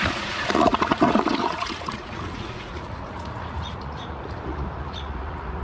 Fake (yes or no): yes